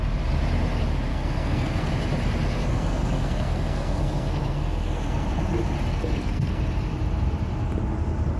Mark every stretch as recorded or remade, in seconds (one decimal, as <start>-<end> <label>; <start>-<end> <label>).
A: 0.0-1.1 recorded; 1.1-1.9 remade; 1.9-2.7 recorded; 2.7-5.4 remade; 5.4-5.9 recorded; 5.9-6.6 remade; 6.6-8.4 recorded

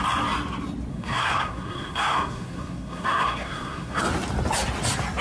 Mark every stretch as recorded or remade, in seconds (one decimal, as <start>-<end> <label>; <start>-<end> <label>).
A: 0.0-0.9 recorded; 0.9-4.0 remade; 4.0-5.2 recorded

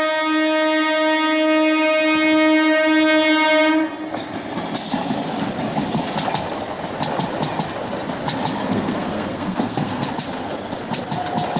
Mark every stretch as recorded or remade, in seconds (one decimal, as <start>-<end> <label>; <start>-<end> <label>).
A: 0.0-8.6 recorded; 8.6-10.1 remade; 10.1-11.6 recorded

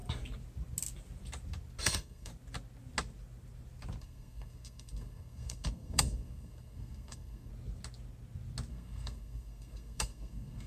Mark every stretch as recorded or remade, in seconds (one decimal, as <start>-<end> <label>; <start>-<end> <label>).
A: 0.0-1.8 recorded; 1.8-2.3 remade; 2.3-4.0 recorded; 4.0-7.5 remade; 7.5-8.7 recorded; 8.7-10.7 remade

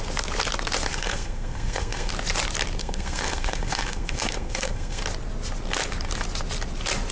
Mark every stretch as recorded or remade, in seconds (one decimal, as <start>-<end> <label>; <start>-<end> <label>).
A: 0.0-0.9 recorded; 0.9-2.1 remade; 2.1-2.8 recorded; 2.8-5.0 remade; 5.0-7.1 recorded

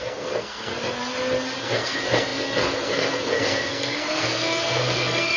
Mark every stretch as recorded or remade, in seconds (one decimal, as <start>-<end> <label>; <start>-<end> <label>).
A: 0.0-0.7 remade; 0.7-1.6 recorded; 1.6-5.4 remade